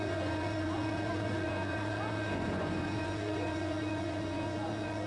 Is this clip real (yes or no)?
no